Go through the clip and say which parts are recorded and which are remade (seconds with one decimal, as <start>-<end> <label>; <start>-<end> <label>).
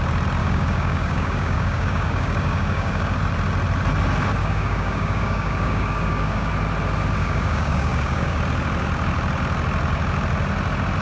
0.0-0.4 recorded; 0.4-3.2 remade; 3.2-4.4 recorded; 4.4-6.5 remade; 6.5-7.2 recorded; 7.2-8.4 remade; 8.4-11.0 recorded